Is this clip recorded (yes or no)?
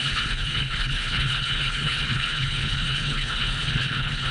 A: no